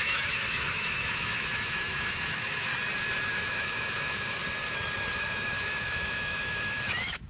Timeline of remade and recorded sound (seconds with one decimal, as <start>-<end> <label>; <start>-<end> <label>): 0.0-2.7 remade; 2.7-3.3 recorded; 3.3-4.4 remade; 4.4-5.1 recorded; 5.1-7.3 remade